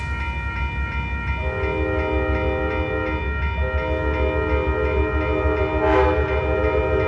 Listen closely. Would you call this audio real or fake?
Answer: real